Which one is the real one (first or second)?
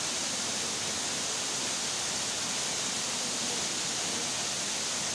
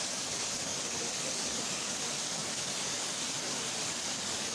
first